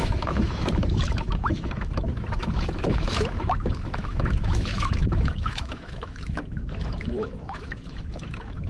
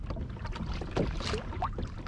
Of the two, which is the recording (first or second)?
second